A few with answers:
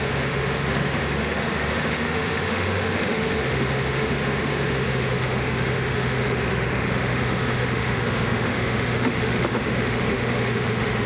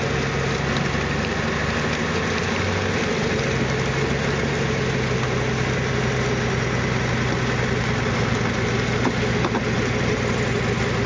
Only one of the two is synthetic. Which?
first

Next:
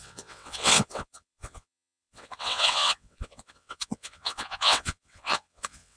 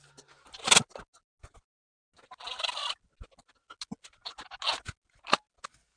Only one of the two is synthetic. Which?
first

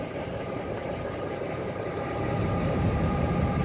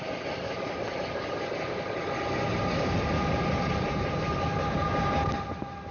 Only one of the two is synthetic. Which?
first